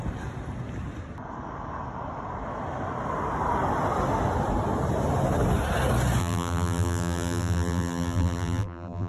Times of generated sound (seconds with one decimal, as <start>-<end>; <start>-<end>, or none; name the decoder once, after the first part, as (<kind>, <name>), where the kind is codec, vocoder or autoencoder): 6.2-9.1 (vocoder, BigVGAN v2)